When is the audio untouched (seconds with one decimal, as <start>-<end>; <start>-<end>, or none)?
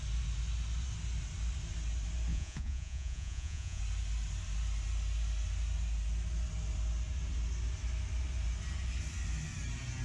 0.0-2.3; 3.8-10.0